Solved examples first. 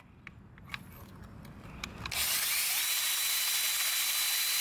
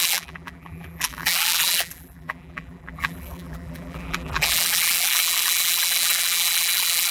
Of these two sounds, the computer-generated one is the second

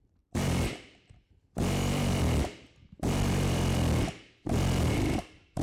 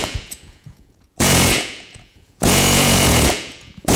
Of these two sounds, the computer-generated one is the second